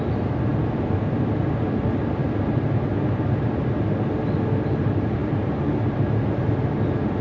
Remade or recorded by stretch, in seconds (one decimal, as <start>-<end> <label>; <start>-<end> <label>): 0.0-7.2 recorded